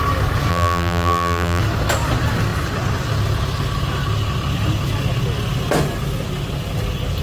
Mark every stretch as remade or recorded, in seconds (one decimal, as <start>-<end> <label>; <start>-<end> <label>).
0.0-0.5 recorded; 0.5-1.6 remade; 1.6-7.2 recorded